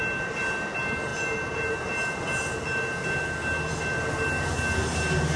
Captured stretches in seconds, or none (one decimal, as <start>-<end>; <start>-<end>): 0.0-5.4